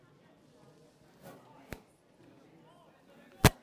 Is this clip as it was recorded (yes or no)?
yes